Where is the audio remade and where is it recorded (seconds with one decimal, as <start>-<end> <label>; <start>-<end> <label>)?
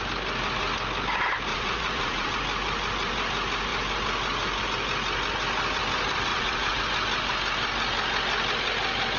0.0-1.5 recorded; 1.5-2.3 remade; 2.3-6.3 recorded; 6.3-6.8 remade; 6.8-9.2 recorded